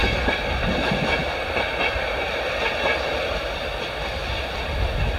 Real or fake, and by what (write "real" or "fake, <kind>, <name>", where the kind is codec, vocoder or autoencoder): real